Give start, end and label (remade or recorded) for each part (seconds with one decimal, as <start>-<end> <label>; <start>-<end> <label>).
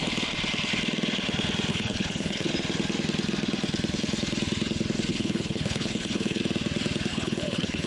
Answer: 0.0-1.7 recorded; 1.7-2.5 remade; 2.5-5.1 recorded; 5.1-6.4 remade; 6.4-7.1 recorded; 7.1-7.9 remade